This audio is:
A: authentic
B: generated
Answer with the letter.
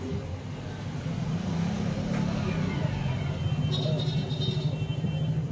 A